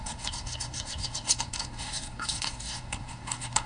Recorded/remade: remade